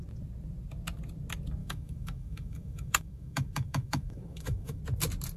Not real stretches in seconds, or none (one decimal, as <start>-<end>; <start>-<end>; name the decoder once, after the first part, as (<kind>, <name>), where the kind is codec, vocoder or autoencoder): 1.6-4.8 (autoencoder, DAC-VAE)